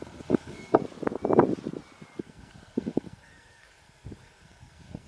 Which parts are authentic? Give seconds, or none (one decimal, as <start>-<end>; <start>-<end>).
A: 0.8-2.2